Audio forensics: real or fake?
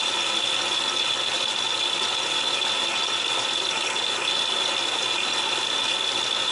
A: real